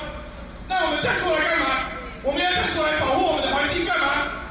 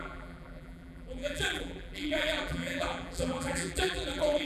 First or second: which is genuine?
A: first